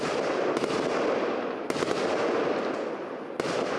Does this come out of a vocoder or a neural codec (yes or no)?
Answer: no